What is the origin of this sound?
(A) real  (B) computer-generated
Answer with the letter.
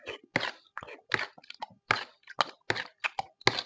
A